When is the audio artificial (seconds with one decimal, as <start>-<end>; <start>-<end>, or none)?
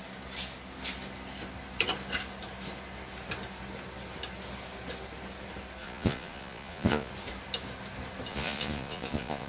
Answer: 5.8-7.1; 8.3-9.5